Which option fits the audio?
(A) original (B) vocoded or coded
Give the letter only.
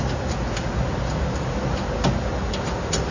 A